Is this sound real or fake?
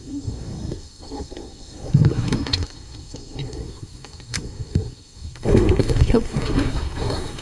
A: fake